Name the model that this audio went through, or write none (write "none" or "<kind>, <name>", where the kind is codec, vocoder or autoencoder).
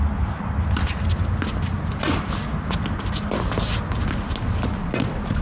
none